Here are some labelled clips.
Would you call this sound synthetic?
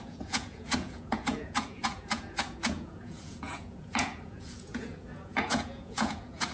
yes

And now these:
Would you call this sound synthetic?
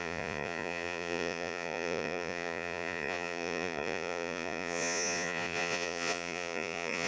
yes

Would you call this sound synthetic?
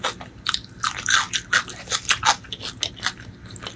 no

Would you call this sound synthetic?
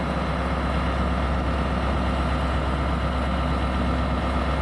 no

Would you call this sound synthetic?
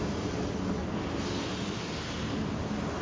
no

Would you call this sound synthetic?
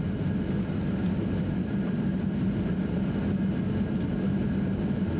no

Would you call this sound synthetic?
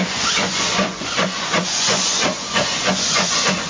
yes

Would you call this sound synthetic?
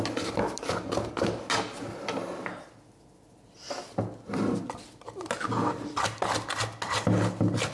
no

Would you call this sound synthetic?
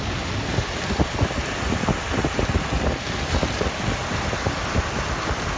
no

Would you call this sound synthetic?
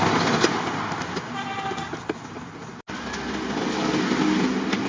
no